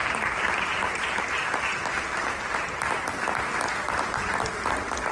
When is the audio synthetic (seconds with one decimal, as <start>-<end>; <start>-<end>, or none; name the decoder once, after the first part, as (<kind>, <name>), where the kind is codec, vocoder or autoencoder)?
0.0-1.9 (vocoder, BigVGAN v2)